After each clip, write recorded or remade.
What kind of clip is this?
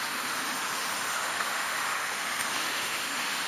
remade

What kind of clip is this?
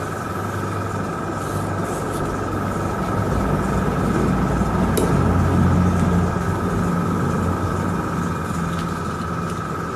recorded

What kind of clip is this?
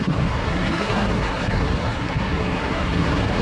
remade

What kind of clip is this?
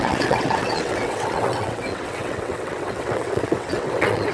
remade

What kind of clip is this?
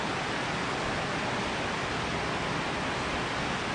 recorded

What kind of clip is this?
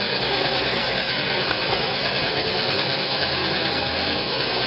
remade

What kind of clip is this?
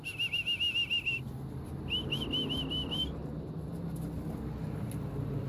recorded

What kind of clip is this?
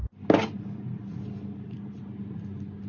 recorded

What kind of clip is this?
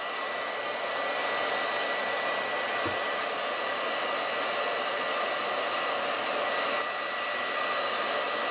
recorded